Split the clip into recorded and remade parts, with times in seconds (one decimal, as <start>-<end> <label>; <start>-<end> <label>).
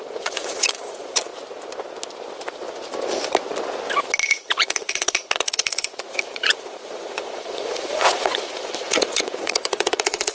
0.0-1.3 remade; 1.3-4.2 recorded; 4.2-10.3 remade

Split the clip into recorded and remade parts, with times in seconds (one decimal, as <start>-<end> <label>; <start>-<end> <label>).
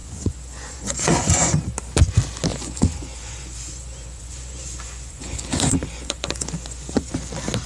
0.0-1.6 remade; 1.6-2.5 recorded; 2.5-7.1 remade; 7.1-7.7 recorded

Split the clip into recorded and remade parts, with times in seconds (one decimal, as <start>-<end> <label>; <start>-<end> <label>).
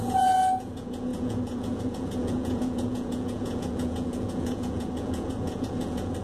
0.0-6.2 remade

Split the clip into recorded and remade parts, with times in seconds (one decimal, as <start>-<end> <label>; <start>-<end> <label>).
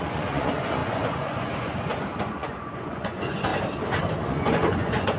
0.0-3.5 remade; 3.5-4.2 recorded; 4.2-5.2 remade